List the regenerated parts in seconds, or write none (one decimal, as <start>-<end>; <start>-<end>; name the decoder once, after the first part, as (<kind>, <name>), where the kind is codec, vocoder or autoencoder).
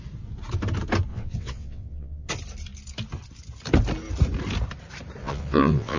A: 1.1-2.3 (vocoder, WaveNeXt); 5.2-6.0